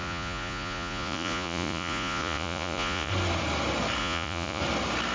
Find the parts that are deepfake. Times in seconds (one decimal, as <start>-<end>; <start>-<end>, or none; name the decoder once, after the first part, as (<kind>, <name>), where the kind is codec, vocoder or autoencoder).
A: 0.0-3.1 (vocoder, Vocos); 4.0-4.6